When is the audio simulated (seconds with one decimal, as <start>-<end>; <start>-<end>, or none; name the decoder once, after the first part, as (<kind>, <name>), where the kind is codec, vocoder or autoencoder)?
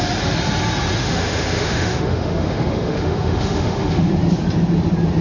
1.0-4.1 (autoencoder, DAC-VAE)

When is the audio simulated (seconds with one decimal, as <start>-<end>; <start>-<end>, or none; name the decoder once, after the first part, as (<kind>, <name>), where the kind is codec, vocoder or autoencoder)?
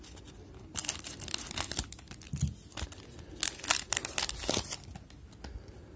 none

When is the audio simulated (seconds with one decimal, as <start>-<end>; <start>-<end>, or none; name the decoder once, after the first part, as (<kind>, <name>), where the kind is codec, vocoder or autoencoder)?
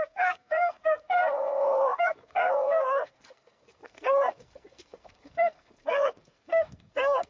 0.0-7.3 (codec, SNAC)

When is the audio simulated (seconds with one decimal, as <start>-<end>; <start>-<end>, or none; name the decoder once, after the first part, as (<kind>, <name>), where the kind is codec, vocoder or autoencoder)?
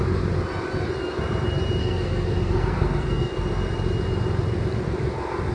1.8-3.3 (codec, SNAC)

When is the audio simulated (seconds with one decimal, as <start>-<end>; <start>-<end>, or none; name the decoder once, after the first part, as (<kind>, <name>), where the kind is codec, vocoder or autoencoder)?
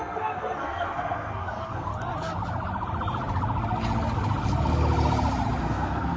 0.0-1.9 (codec, SNAC); 5.6-6.2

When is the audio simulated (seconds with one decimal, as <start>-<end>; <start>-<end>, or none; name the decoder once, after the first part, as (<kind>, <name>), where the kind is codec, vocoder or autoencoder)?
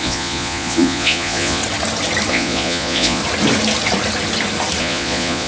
0.0-1.6 (vocoder, Vocos); 2.3-3.2; 4.8-5.5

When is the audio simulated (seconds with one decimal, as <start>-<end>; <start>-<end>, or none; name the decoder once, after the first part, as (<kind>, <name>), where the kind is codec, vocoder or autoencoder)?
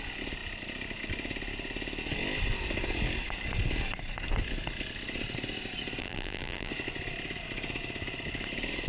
6.0-6.7 (vocoder, BigVGAN v2)